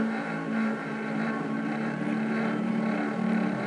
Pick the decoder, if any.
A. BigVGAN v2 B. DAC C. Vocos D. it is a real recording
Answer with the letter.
A